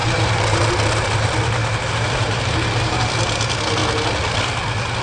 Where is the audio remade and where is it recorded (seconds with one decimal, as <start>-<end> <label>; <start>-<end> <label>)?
0.0-0.6 remade; 0.6-1.6 recorded; 1.6-3.0 remade; 3.0-5.0 recorded